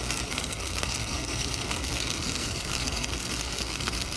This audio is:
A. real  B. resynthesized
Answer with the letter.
B